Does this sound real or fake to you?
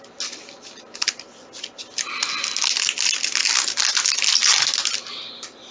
real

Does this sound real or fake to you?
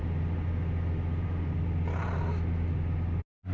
real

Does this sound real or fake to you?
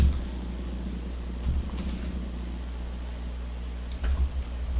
real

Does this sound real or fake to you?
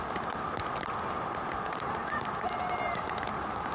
real